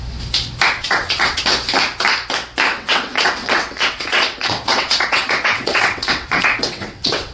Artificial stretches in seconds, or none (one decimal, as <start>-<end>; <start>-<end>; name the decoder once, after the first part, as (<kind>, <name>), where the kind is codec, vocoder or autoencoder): 0.8-1.4 (vocoder, WaveNeXt); 2.7-7.3

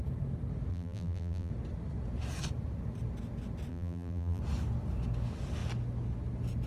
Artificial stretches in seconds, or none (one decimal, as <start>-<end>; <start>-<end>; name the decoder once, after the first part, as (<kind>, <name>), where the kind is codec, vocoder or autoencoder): 0.7-1.5 (vocoder, BigVGAN v2); 3.7-4.4

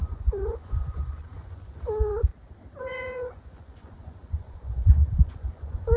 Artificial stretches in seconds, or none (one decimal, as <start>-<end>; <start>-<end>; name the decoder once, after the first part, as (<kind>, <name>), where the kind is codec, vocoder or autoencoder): 0.0-2.3 (vocoder, Vocos); 2.8-6.0

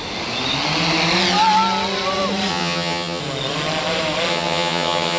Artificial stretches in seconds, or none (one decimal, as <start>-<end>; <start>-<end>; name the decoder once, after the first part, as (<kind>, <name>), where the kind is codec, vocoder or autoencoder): 2.5-3.2 (vocoder, HiFi-GAN); 4.3-5.2

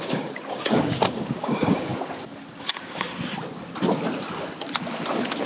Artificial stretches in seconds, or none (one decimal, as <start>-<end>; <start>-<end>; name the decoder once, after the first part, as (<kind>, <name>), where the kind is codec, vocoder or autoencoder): 0.0-1.9 (codec, DAC); 2.7-3.1

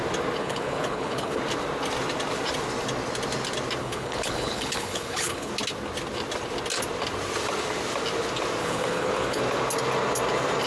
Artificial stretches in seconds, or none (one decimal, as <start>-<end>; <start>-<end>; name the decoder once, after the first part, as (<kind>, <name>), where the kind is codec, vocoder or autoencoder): 0.4-1.4 (codec, HILCodec); 3.8-5.5; 8.6-9.4